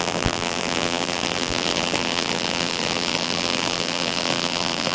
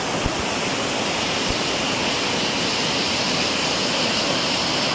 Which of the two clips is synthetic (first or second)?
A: first